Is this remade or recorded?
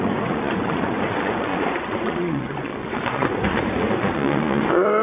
remade